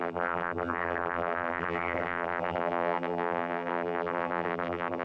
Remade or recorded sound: remade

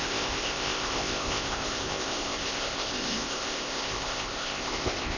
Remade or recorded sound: remade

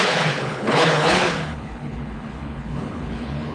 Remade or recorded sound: remade